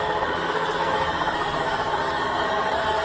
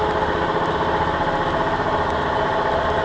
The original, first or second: second